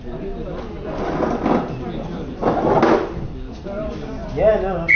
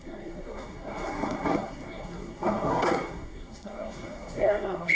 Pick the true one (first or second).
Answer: first